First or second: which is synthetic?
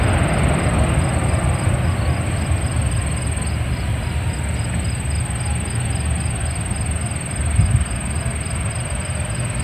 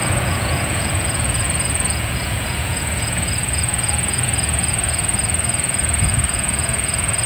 second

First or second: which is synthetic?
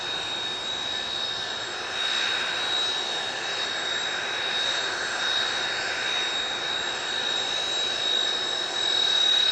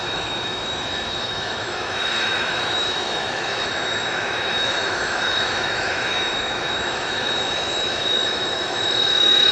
second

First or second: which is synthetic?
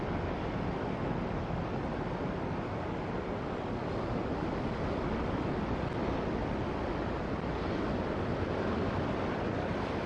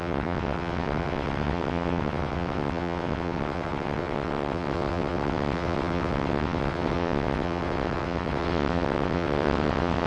second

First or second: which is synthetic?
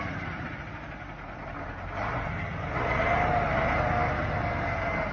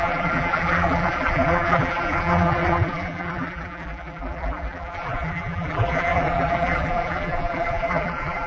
second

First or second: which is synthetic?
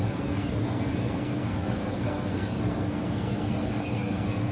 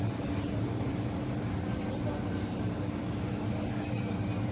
first